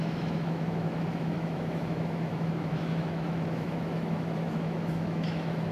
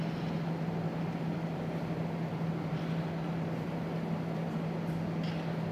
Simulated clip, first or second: first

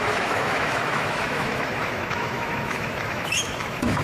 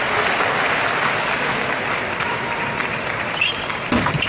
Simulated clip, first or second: first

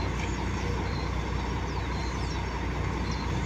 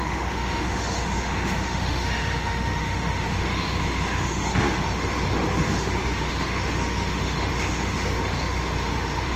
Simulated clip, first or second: second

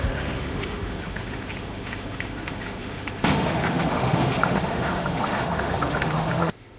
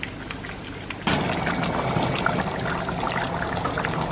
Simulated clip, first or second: first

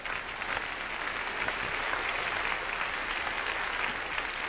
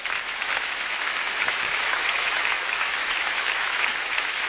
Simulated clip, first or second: second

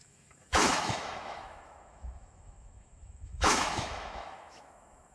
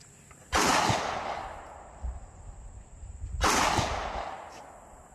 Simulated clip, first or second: first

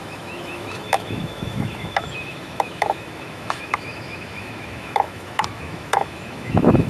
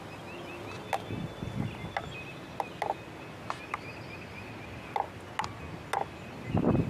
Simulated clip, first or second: first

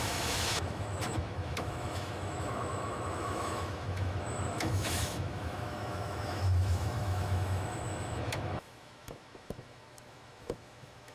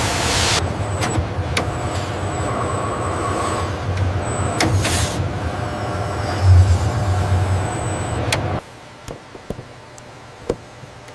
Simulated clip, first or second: first